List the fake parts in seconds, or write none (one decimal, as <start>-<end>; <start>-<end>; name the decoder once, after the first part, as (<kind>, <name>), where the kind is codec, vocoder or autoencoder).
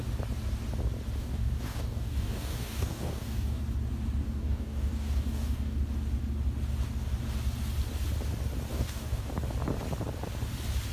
1.2-3.6 (codec, DAC); 4.2-5.8; 8.7-9.3